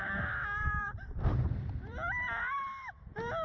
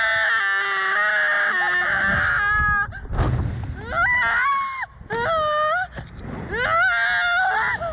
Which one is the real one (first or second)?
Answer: second